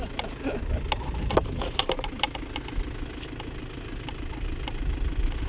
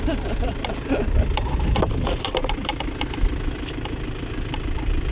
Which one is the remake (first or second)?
second